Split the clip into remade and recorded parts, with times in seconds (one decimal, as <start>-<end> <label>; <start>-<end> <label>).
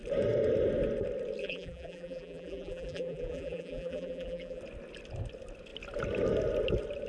0.0-1.4 recorded; 1.4-4.6 remade; 4.6-7.1 recorded